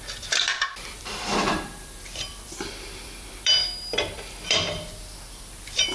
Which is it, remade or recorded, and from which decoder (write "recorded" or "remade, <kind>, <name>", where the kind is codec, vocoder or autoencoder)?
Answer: remade, vocoder, BigVGAN v2